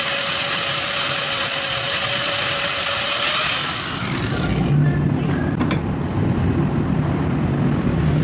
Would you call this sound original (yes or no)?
yes